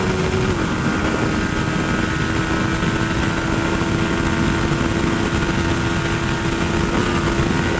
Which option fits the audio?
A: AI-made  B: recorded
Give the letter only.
B